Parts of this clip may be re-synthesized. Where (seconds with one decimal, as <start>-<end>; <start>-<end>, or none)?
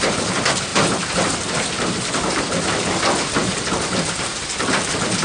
0.7-2.1